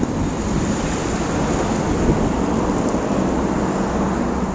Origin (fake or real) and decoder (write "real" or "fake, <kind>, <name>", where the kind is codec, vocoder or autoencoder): real